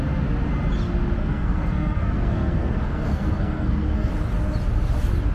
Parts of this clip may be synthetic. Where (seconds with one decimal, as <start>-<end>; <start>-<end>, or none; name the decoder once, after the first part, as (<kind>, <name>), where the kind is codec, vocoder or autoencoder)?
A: 1.2-4.1 (codec, SNAC)